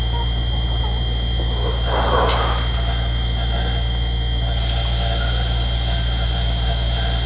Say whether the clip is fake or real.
real